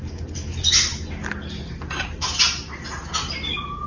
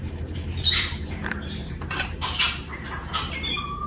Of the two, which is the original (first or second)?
first